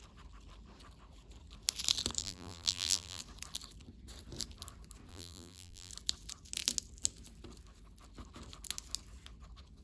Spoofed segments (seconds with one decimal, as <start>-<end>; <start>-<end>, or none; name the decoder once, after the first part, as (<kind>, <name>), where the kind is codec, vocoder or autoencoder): 2.2-3.2 (vocoder, BigVGAN v2); 5.1-5.9